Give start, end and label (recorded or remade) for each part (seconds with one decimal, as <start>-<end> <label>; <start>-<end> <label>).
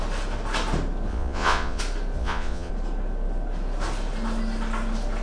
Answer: 0.0-1.1 recorded; 1.1-1.8 remade; 1.8-2.2 recorded; 2.2-2.7 remade; 2.7-5.2 recorded